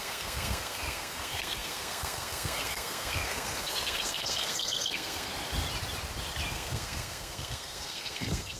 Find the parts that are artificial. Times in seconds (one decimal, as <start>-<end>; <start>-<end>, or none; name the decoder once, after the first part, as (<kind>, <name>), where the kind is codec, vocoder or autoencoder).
0.0-5.3 (codec, SNAC); 6.5-8.6

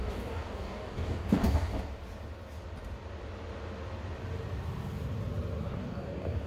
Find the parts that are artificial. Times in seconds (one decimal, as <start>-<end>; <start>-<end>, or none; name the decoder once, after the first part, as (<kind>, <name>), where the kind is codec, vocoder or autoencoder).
0.0-1.7 (codec, DAC); 5.6-6.5

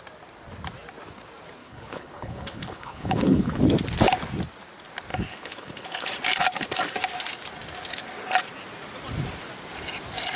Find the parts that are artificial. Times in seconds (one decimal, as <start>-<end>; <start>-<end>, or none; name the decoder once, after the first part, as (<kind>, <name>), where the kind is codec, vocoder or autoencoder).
1.6-3.6 (codec, HILCodec); 5.1-6.1

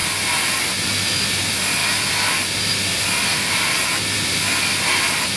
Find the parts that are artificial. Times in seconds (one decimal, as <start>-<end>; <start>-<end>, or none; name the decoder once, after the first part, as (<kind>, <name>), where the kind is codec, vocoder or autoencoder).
none

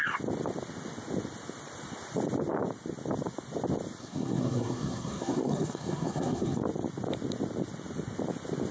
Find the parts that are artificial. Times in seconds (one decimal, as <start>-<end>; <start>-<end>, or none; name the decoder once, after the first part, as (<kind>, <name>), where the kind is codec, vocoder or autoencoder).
4.0-6.6 (codec, SNAC)

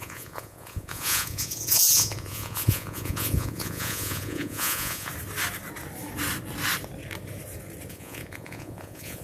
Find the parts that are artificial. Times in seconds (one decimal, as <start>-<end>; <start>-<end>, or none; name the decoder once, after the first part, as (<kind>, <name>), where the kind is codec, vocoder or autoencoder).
0.0-5.1 (vocoder, Vocos); 7.9-9.2

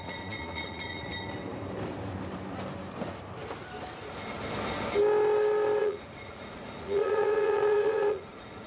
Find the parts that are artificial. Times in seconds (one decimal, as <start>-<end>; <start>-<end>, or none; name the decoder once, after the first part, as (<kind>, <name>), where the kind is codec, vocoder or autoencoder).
0.0-1.1 (vocoder, Vocos); 5.8-8.7